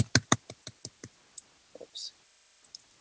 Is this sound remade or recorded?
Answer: recorded